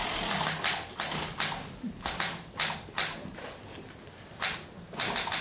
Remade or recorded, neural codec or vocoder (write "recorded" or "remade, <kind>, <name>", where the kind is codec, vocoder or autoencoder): recorded